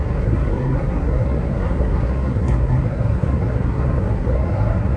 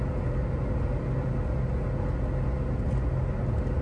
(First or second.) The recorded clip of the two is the second